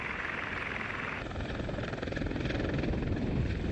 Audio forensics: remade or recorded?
recorded